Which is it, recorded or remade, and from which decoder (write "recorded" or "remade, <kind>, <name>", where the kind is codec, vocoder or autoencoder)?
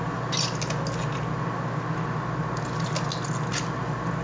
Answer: recorded